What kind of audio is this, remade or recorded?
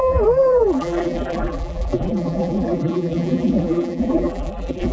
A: remade